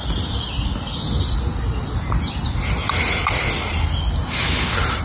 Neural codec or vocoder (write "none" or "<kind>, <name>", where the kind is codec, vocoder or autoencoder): none